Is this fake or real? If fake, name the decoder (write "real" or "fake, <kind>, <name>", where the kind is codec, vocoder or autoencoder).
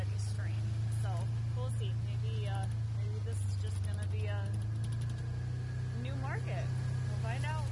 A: real